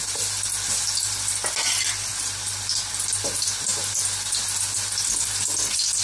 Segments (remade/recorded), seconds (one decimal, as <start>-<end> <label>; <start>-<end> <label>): 0.0-6.0 recorded